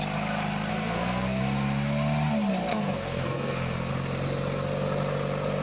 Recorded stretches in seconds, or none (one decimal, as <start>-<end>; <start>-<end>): 0.0-0.7; 1.4-2.7; 3.9-5.6